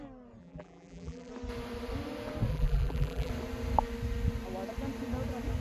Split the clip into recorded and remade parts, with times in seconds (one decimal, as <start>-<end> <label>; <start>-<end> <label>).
0.0-0.4 recorded; 0.4-1.3 remade; 1.3-2.5 recorded; 2.5-3.3 remade; 3.3-5.6 recorded